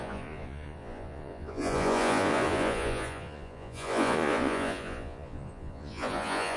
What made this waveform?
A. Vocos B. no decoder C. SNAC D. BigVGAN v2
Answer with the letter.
A